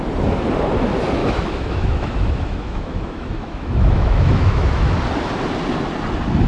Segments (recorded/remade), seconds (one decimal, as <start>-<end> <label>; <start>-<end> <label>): 0.0-1.2 recorded; 1.2-5.0 remade; 5.0-6.5 recorded